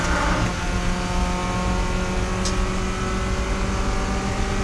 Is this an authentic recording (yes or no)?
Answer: yes